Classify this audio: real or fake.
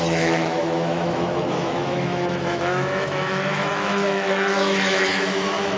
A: fake